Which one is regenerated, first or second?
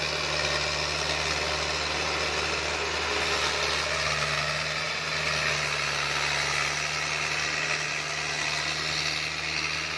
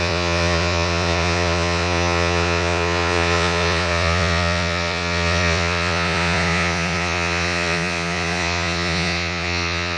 second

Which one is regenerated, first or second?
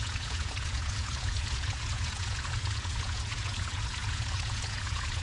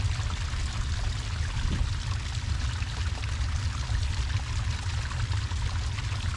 first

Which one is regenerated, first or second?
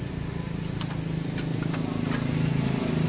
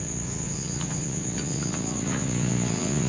second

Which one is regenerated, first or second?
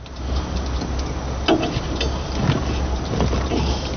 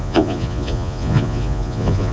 second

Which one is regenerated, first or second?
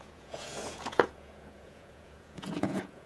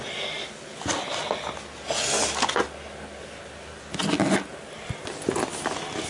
first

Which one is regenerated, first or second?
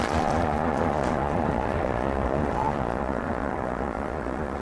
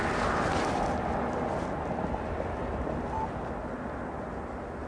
first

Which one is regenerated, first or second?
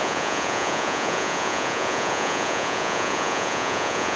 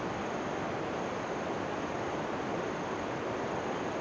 first